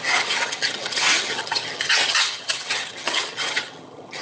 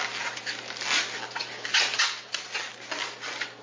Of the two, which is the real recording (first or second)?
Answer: second